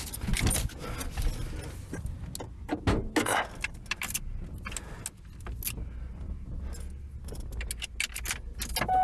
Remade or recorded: recorded